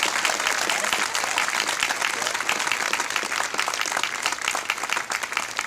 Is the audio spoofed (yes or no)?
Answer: no